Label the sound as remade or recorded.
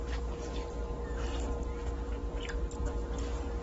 recorded